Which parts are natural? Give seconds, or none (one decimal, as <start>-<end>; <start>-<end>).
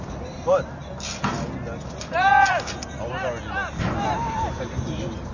0.8-4.0